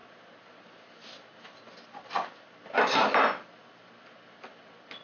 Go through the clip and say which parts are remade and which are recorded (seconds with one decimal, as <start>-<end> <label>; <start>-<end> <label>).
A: 0.0-5.0 recorded